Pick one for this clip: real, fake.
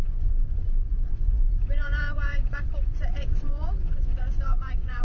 fake